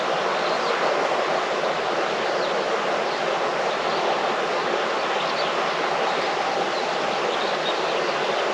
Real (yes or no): yes